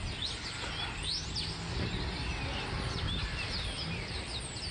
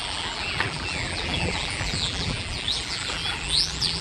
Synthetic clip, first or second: second